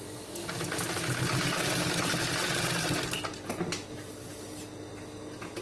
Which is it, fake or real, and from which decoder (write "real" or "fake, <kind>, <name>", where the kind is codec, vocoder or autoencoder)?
real